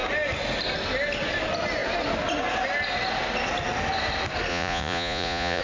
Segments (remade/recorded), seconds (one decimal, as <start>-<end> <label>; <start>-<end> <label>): 0.0-4.5 recorded; 4.5-5.6 remade